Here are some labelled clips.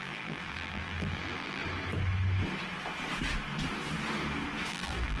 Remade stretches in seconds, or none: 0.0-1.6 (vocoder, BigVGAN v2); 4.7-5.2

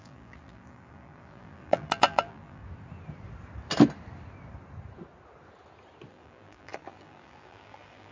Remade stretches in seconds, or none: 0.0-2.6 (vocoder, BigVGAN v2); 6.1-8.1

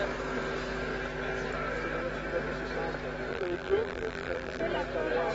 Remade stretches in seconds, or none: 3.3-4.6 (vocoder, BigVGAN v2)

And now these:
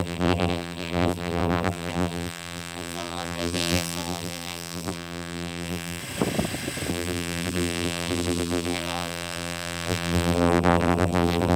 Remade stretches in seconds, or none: 0.0-6.0 (vocoder, BigVGAN v2); 6.9-11.6

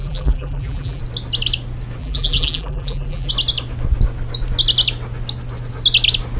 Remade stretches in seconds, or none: 0.0-1.0 (vocoder, BigVGAN v2); 2.0-3.3

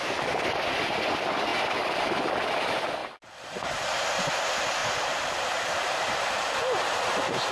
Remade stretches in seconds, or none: 3.0-3.7 (vocoder, BigVGAN v2); 4.8-7.5

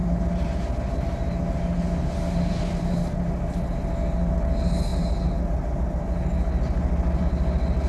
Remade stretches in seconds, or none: none